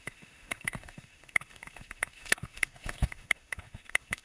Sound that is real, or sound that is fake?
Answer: fake